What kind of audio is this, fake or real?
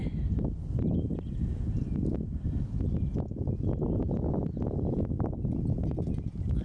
real